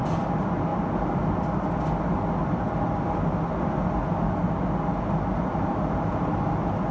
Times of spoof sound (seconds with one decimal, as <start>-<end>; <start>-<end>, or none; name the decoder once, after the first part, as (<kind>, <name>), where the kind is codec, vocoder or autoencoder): none